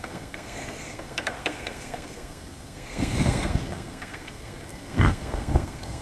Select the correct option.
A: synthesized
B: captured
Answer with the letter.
A